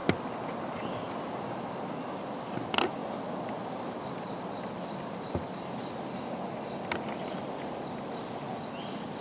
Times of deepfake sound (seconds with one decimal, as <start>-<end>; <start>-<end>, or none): none